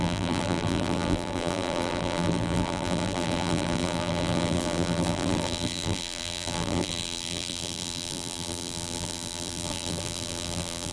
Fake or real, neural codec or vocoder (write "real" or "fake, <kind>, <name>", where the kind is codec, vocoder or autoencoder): fake, vocoder, BigVGAN v2